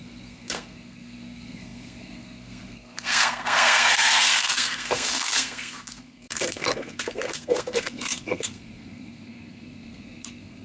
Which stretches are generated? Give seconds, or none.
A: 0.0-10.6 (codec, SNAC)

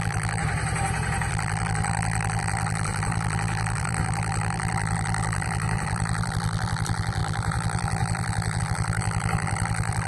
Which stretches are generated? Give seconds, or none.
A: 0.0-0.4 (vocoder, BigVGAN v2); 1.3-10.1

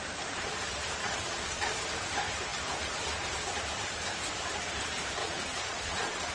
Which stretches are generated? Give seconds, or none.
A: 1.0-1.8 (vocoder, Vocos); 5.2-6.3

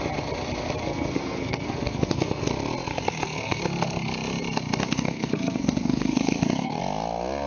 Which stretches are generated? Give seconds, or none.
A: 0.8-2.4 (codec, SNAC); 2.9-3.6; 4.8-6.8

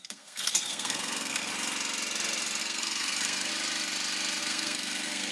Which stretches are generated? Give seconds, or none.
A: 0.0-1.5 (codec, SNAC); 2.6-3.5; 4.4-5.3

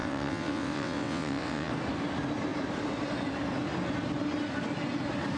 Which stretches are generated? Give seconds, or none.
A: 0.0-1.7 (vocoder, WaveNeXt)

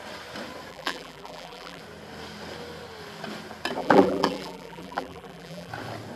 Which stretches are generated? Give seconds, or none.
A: 0.7-1.8 (vocoder, BigVGAN v2); 3.8-5.7